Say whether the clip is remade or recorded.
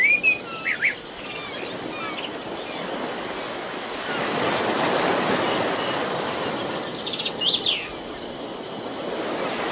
recorded